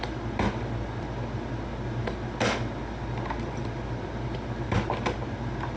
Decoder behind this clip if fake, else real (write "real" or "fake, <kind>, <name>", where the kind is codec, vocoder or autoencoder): real